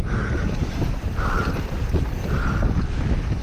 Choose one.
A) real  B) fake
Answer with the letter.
A